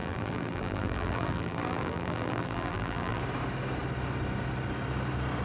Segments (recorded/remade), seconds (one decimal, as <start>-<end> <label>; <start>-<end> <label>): 0.0-3.2 remade; 3.2-5.4 recorded